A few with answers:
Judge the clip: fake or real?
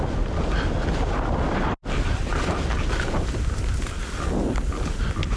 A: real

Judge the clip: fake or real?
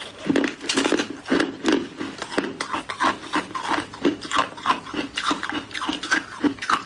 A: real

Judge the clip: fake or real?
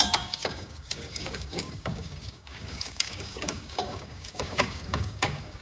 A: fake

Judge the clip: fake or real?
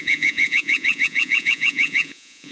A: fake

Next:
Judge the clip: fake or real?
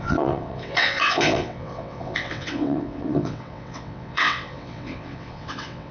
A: fake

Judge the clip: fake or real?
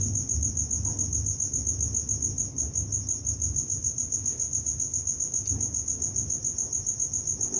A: real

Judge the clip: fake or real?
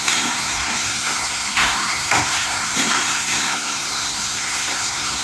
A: fake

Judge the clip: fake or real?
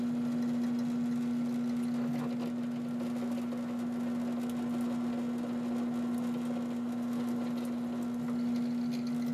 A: real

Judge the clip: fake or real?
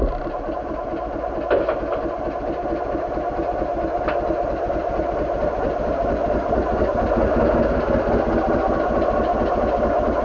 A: real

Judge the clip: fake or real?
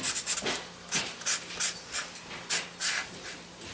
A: real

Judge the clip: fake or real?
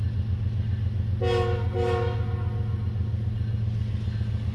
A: real